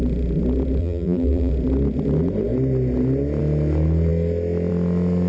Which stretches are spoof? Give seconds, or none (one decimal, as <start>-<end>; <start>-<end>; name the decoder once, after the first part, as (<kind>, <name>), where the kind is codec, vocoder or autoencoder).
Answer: 0.8-1.5 (vocoder, BigVGAN v2)